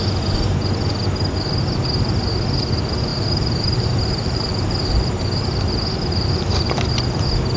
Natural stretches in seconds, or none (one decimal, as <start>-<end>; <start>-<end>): 0.0-3.1; 5.2-7.6